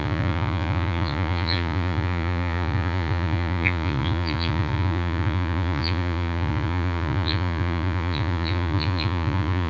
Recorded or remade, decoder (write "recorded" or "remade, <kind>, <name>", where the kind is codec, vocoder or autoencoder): remade, vocoder, Vocos